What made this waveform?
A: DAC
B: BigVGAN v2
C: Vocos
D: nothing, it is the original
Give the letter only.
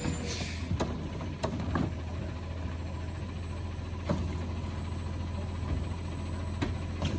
D